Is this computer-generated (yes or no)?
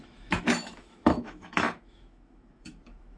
yes